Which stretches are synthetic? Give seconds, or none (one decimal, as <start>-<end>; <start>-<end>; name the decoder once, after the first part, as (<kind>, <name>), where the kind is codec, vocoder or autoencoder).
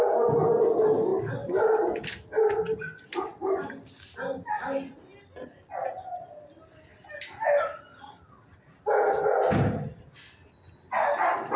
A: none